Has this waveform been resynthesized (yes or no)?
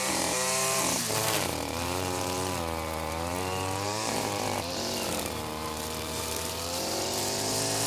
yes